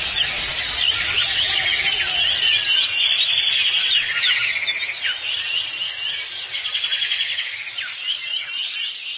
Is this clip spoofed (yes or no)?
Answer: no